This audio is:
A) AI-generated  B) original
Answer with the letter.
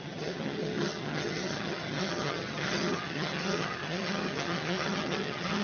A